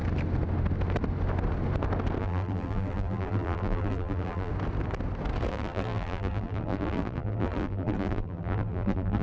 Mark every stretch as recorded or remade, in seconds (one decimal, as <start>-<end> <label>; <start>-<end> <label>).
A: 0.0-2.2 recorded; 2.2-4.5 remade; 4.5-5.5 recorded; 5.5-9.2 remade